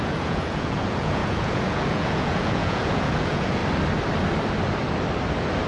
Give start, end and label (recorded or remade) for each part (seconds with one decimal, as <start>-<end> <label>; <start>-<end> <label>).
0.0-3.6 remade; 3.6-5.7 recorded